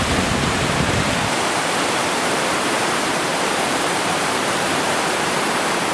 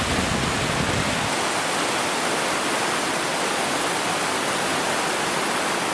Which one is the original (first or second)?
second